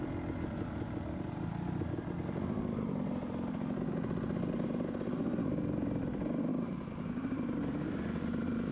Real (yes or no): yes